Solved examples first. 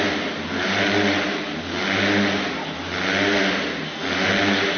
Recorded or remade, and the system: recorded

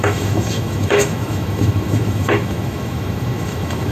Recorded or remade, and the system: remade, autoencoder, DAC-VAE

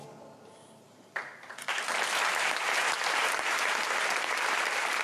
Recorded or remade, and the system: recorded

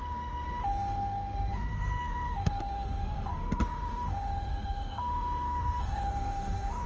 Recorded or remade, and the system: remade, autoencoder, DAC-VAE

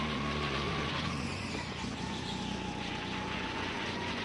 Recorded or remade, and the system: remade, vocoder, Vocos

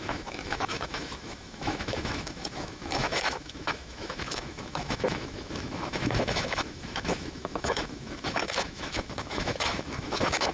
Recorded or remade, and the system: remade, autoencoder, DAC-VAE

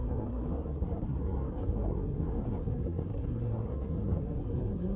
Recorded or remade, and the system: remade, codec, SNAC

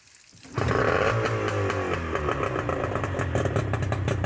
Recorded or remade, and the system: recorded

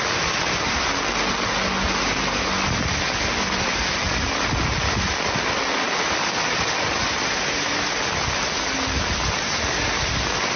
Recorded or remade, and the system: recorded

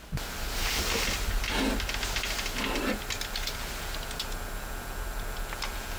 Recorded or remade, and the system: recorded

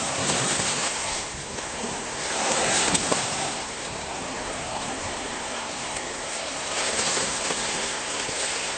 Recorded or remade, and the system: remade, codec, SNAC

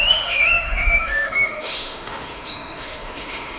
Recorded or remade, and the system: remade, autoencoder, DAC-VAE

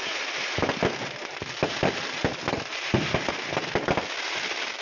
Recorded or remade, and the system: recorded